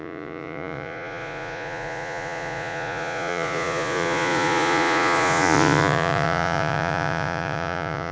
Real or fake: fake